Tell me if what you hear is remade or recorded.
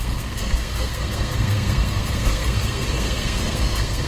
remade